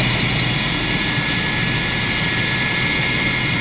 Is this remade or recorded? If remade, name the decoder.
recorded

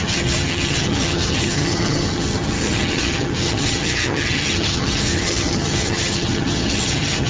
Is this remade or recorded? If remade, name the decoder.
remade, vocoder, HiFi-GAN